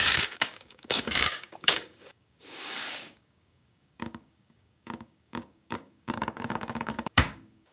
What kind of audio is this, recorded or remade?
remade